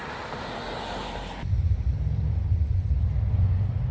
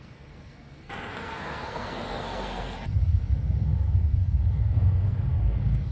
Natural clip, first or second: first